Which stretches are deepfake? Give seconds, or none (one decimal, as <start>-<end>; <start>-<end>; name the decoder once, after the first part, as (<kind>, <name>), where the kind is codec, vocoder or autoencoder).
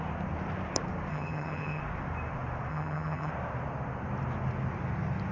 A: 1.1-1.8 (vocoder, HiFi-GAN); 2.7-3.3